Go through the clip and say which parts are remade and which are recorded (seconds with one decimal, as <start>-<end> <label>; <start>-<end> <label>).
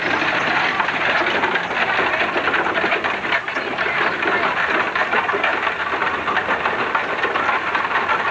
0.0-8.3 recorded